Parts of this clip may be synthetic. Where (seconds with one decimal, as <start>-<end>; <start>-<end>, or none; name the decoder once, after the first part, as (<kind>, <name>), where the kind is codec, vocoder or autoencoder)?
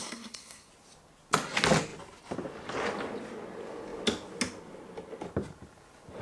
0.0-0.7 (codec, SNAC)